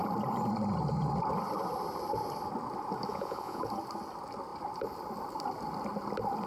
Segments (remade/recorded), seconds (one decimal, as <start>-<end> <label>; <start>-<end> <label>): 0.0-3.1 recorded; 3.1-3.6 remade; 3.6-6.5 recorded